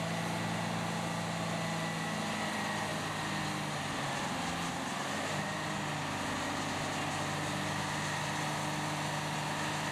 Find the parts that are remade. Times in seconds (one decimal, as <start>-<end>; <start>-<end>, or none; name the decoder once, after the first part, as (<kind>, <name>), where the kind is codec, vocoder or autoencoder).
none